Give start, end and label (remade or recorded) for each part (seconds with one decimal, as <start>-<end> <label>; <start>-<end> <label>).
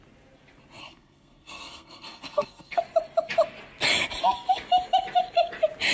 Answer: 0.0-0.8 recorded; 0.8-2.8 remade; 2.8-5.9 recorded